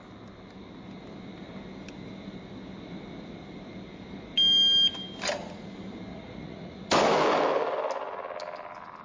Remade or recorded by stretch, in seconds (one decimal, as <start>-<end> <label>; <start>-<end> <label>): 0.0-6.1 recorded; 6.1-6.9 remade; 6.9-9.0 recorded